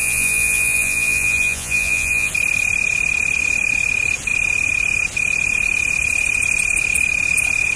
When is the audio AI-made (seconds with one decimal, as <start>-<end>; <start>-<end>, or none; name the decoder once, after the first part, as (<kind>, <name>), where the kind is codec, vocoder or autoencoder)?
0.0-2.3 (vocoder, Vocos)